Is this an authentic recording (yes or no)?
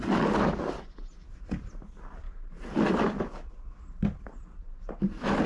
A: yes